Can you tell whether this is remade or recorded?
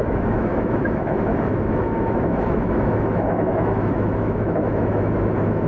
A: remade